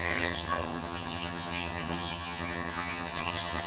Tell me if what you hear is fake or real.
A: fake